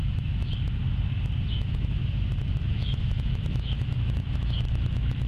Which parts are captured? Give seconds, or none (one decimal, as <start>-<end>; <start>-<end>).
0.8-1.5; 2.0-2.6